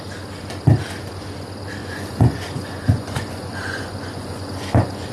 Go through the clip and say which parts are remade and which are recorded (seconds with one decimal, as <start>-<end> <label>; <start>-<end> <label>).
0.0-1.8 recorded; 1.8-5.1 remade